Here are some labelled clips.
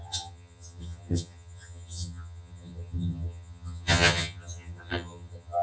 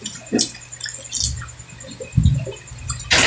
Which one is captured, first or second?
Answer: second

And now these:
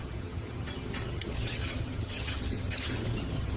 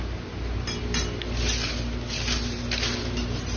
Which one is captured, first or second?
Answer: second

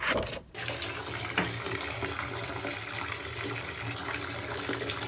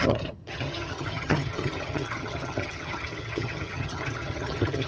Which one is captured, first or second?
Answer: first